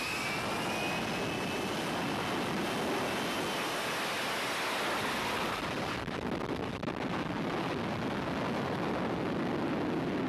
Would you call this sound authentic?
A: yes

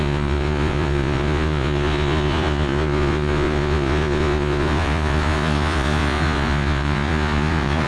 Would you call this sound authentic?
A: no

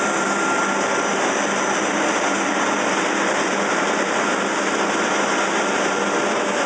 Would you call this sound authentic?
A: yes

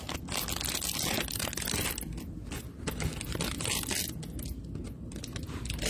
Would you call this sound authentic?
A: yes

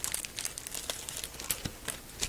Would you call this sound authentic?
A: yes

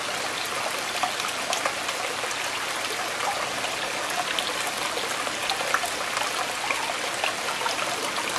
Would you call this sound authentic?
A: yes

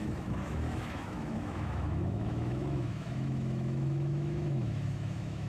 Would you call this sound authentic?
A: no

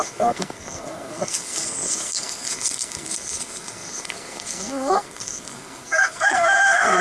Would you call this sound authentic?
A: no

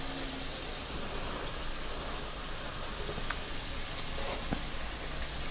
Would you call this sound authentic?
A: yes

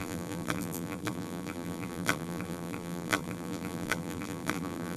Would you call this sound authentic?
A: no